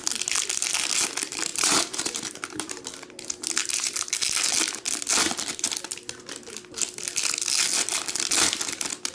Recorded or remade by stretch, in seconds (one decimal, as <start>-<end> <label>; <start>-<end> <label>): 0.0-1.5 recorded; 1.5-2.8 remade; 2.8-3.6 recorded; 3.6-4.2 remade; 4.2-9.1 recorded